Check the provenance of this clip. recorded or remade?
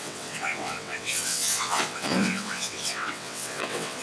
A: remade